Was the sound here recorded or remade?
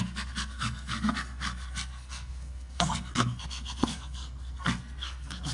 remade